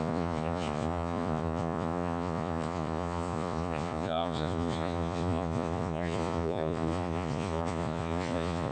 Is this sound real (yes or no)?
no